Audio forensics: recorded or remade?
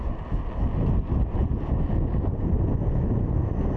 recorded